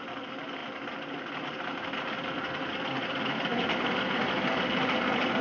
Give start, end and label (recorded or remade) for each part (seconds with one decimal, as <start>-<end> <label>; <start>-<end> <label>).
0.0-5.4 recorded